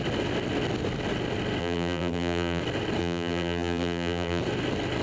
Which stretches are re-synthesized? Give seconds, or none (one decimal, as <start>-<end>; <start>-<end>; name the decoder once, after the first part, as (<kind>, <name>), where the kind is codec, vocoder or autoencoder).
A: 1.6-2.6 (vocoder, BigVGAN v2); 3.0-4.4